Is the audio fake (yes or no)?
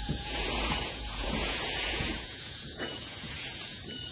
yes